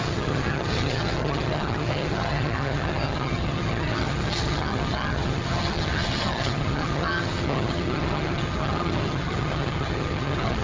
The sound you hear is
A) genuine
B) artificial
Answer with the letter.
B